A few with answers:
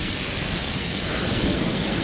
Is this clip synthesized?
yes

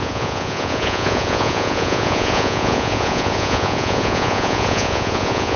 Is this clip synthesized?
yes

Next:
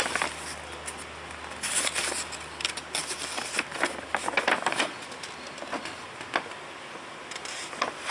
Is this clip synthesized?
no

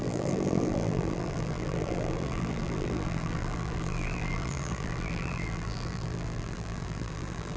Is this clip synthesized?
yes